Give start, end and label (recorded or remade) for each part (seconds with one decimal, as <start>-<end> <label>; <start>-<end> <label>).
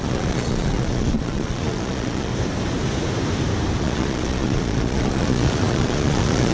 0.0-2.3 remade; 2.3-3.8 recorded; 3.8-6.5 remade